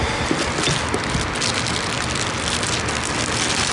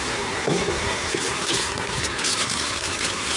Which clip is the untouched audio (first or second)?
first